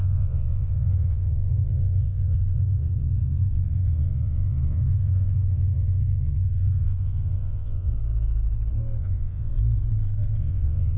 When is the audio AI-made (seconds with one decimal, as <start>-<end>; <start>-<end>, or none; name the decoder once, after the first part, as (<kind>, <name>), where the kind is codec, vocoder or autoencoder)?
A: 0.0-7.9 (vocoder, Vocos); 9.0-9.5; 10.4-11.0